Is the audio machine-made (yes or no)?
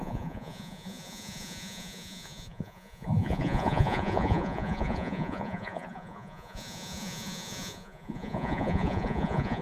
yes